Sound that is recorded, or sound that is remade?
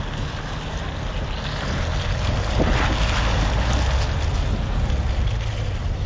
recorded